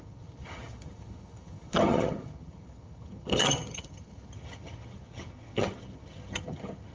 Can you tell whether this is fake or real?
fake